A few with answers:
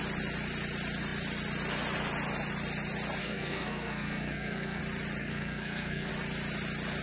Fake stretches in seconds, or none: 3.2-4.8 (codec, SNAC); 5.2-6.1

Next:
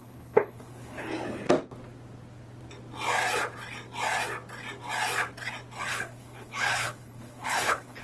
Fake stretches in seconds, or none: 0.0-1.1 (codec, HILCodec); 5.9-8.0

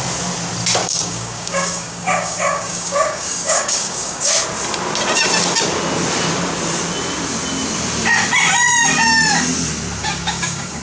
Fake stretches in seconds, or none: 0.8-4.3 (codec, DAC); 10.0-10.8

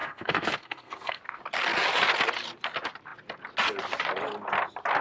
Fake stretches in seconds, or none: 0.0-1.2 (codec, SNAC)

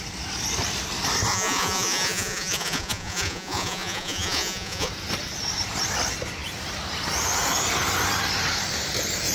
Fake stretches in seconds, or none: 1.3-4.9 (vocoder, Vocos)

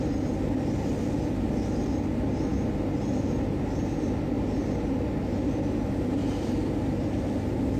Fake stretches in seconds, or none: none

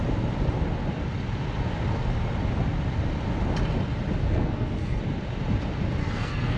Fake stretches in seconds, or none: 4.2-5.0 (codec, SNAC); 6.0-6.6